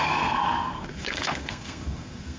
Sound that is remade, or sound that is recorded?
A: remade